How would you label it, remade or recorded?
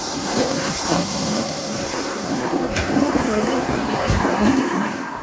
remade